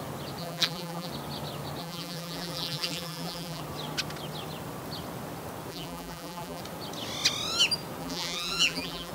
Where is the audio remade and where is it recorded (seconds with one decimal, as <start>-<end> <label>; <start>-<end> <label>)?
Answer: 0.0-0.4 recorded; 0.4-1.1 remade; 1.1-1.8 recorded; 1.8-3.6 remade; 3.6-5.7 recorded; 5.7-6.6 remade; 6.6-8.0 recorded; 8.0-9.1 remade